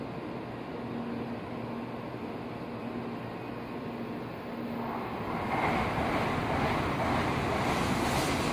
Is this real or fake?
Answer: real